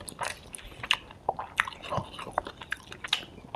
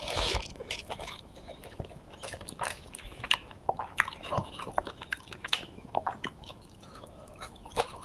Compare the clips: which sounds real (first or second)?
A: first